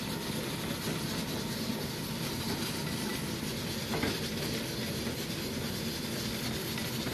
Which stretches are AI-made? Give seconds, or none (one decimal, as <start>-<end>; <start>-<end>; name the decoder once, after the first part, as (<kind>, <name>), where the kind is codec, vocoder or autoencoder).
none